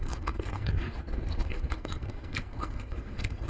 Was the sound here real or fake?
fake